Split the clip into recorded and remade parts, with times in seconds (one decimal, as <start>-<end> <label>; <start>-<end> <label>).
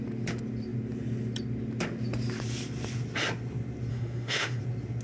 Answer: 0.0-3.9 recorded; 3.9-4.6 remade; 4.6-5.0 recorded